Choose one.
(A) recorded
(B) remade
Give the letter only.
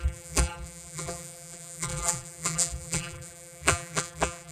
B